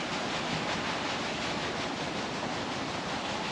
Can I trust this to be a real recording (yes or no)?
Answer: yes